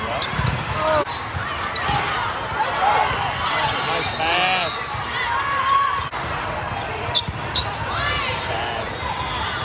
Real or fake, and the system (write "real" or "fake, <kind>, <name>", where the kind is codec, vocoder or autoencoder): real